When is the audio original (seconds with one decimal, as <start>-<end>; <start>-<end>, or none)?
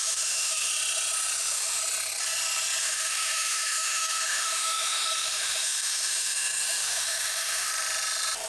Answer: 0.7-1.4; 1.8-2.8; 7.7-8.5